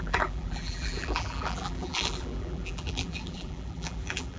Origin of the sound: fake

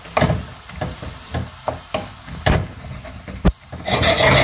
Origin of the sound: real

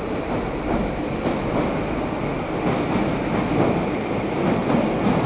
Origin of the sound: real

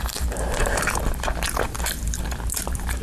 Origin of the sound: fake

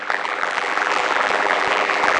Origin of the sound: fake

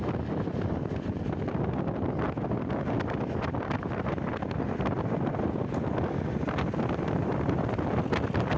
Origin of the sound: fake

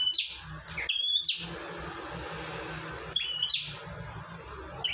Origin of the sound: real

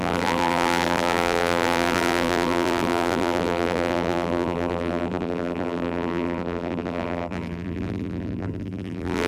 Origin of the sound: fake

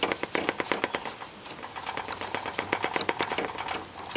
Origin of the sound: real